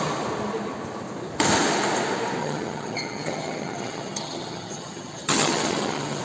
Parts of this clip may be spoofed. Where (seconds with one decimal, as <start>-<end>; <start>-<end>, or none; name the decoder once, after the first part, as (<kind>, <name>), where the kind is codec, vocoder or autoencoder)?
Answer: 2.4-6.2 (vocoder, HiFi-GAN)